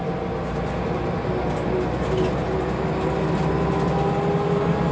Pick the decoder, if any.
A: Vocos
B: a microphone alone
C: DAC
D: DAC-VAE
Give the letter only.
B